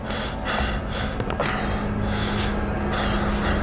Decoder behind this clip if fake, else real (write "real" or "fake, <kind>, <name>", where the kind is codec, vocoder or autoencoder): real